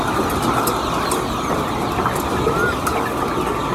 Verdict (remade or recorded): recorded